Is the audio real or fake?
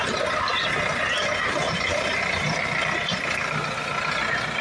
real